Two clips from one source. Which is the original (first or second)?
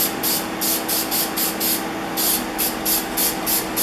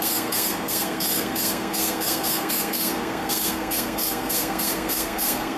first